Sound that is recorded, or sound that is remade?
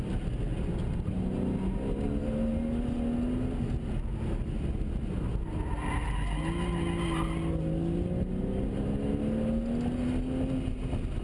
recorded